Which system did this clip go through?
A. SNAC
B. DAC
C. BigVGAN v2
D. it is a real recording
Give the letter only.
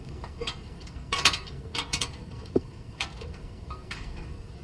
A